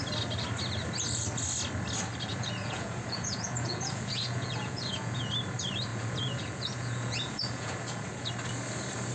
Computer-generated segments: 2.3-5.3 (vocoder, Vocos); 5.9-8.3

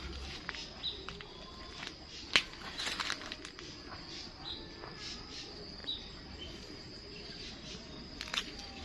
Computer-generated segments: 5.8-7.5 (vocoder, BigVGAN v2)

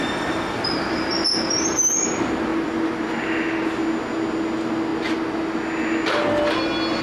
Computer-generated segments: none

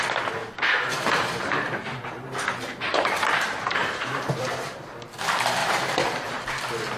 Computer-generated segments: 0.4-1.7 (vocoder, BigVGAN v2); 2.9-4.8; 5.6-6.5

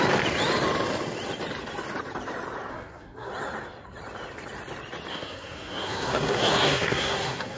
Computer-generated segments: 2.7-3.3 (codec, SNAC); 5.1-7.6

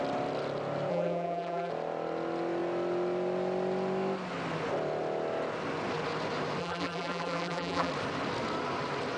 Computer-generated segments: 0.9-1.7 (vocoder, BigVGAN v2); 6.6-7.9

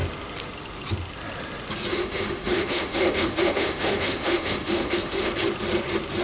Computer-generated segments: 1.9-5.3 (autoencoder, DAC-VAE)

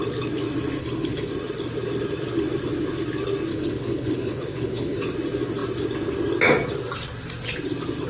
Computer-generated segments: 0.8-1.3 (codec, HILCodec); 3.5-5.0